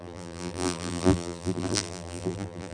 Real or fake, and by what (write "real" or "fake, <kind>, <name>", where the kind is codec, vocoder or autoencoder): fake, vocoder, BigVGAN v2